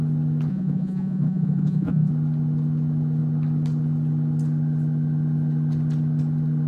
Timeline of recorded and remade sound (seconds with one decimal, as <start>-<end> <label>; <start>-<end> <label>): 0.0-0.5 recorded; 0.5-2.1 remade; 2.1-6.7 recorded